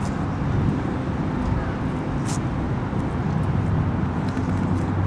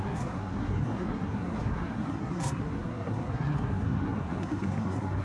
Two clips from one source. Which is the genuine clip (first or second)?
first